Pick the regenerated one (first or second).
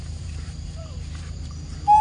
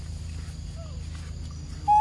first